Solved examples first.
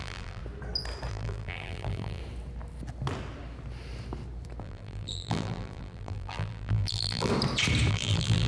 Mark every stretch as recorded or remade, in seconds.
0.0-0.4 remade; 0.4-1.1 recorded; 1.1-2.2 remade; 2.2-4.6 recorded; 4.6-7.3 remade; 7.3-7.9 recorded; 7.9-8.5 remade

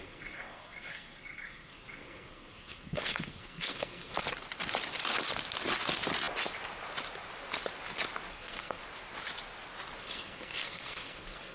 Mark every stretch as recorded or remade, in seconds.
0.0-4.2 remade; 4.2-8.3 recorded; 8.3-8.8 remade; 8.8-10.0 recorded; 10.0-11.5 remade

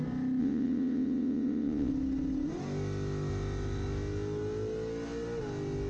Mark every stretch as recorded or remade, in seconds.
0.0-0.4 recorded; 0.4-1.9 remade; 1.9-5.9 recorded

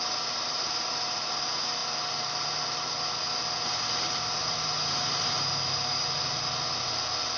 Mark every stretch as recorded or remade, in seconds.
0.0-1.3 remade; 1.3-4.4 recorded; 4.4-6.2 remade; 6.2-7.4 recorded

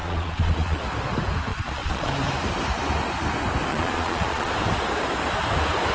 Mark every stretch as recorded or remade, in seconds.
0.0-0.8 remade; 0.8-1.5 recorded; 1.5-2.1 remade; 2.1-3.7 recorded; 3.7-4.5 remade; 4.5-5.9 recorded

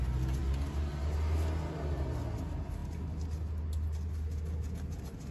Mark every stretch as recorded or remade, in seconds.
0.0-5.3 recorded